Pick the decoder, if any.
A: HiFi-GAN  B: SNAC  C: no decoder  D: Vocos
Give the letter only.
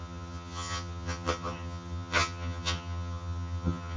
A